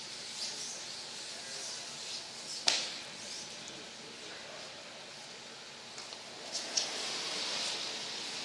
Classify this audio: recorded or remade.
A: recorded